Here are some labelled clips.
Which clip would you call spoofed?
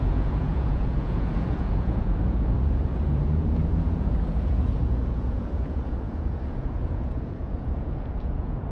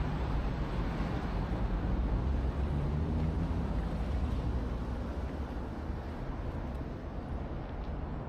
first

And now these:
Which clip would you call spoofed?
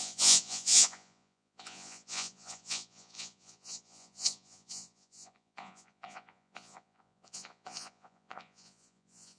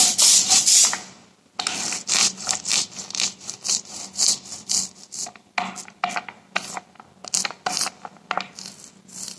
first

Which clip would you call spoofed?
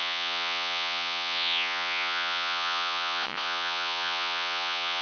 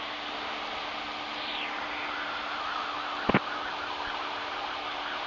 first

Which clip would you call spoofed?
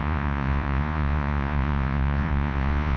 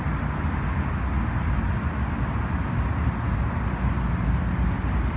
first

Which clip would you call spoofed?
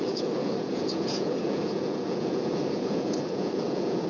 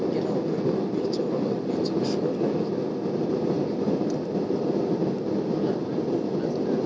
first